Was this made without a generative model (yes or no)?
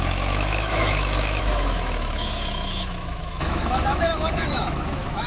no